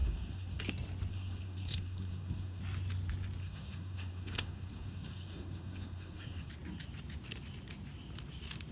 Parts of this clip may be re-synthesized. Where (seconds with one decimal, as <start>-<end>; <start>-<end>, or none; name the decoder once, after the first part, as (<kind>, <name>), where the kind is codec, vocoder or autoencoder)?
0.0-0.6 (codec, SNAC); 1.1-2.6; 3.4-6.5